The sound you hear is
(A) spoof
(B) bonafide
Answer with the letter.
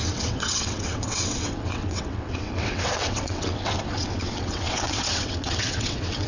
A